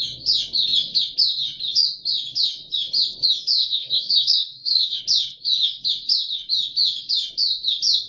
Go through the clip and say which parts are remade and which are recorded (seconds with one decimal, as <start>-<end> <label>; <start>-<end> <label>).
0.0-3.6 recorded; 3.6-5.0 remade; 5.0-8.1 recorded